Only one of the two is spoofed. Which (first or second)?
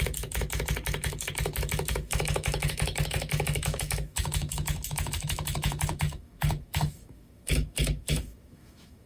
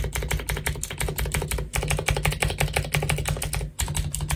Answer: first